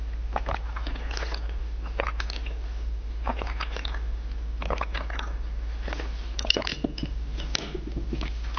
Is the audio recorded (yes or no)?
yes